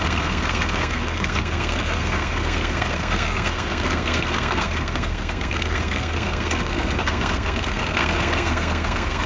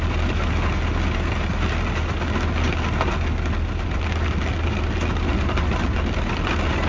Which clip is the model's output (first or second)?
first